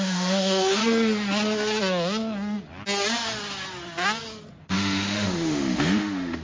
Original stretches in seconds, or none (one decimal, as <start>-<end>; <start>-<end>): 0.8-4.6